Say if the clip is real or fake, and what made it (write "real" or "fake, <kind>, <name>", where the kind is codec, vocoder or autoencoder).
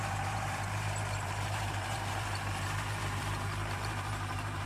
fake, vocoder, BigVGAN v2